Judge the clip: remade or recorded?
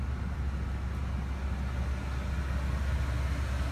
recorded